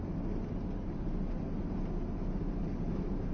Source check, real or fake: real